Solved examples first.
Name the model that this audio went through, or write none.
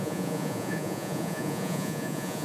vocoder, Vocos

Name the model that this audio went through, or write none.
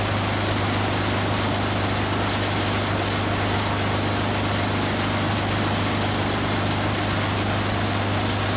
none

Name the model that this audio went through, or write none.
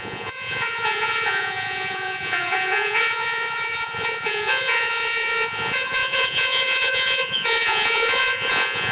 vocoder, Vocos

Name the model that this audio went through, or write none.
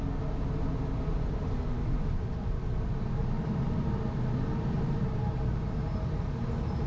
none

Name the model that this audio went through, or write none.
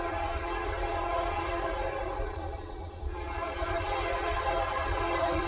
vocoder, Vocos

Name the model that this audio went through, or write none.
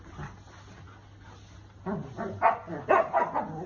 none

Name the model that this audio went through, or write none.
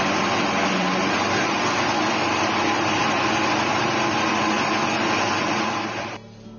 none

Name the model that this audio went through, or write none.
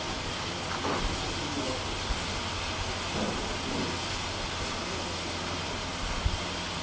none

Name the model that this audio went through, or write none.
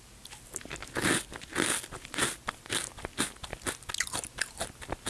none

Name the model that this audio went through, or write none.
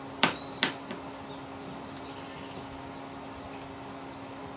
none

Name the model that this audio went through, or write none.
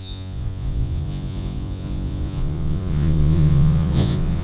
vocoder, Vocos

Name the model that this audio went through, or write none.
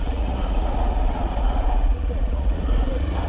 vocoder, Vocos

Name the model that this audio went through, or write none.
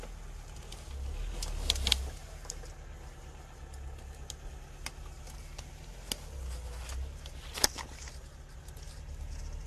none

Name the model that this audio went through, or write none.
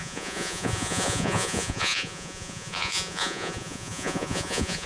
vocoder, Vocos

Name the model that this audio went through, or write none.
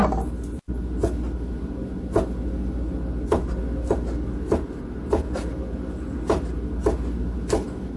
none